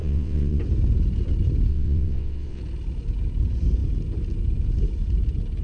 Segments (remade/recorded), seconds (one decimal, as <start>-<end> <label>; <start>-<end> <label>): 0.0-0.6 remade; 0.6-1.7 recorded; 1.7-2.6 remade; 2.6-5.6 recorded